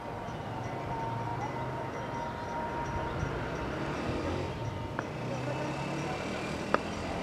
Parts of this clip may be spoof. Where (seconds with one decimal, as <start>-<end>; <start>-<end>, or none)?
none